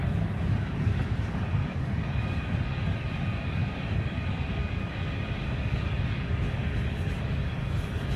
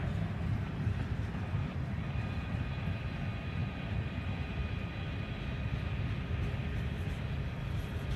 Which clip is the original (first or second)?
second